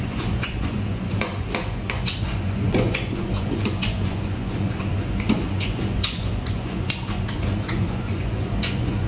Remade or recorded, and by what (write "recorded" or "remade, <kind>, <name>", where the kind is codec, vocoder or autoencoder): remade, vocoder, Vocos